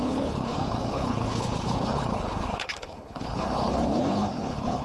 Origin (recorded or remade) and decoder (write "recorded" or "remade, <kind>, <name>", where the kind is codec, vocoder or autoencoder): remade, codec, HILCodec